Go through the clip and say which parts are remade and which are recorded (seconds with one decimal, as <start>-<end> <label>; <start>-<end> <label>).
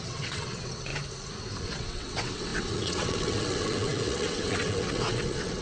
0.0-0.9 remade; 0.9-1.6 recorded; 1.6-5.6 remade